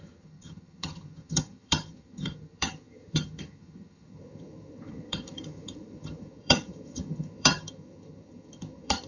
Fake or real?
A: fake